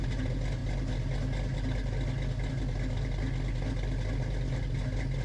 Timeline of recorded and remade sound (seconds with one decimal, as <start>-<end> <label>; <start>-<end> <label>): 0.0-5.2 recorded